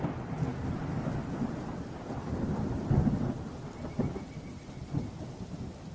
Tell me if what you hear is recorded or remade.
recorded